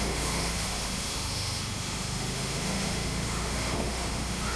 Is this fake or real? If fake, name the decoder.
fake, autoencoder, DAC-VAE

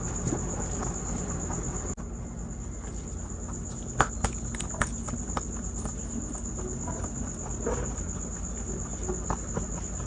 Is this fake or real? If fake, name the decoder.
real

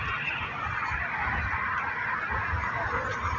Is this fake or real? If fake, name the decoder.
real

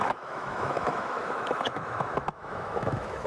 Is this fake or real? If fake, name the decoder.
fake, autoencoder, DAC-VAE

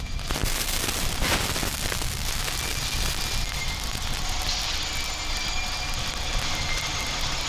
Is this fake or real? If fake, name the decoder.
real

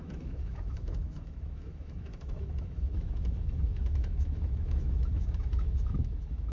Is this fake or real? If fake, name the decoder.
fake, autoencoder, DAC-VAE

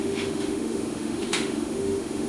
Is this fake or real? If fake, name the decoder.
fake, autoencoder, DAC-VAE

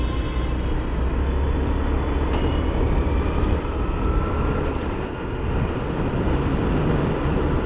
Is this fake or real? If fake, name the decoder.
real